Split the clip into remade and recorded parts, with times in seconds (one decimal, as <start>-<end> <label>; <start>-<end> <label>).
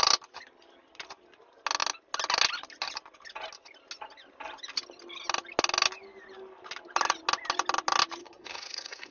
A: 0.0-8.2 recorded; 8.2-9.1 remade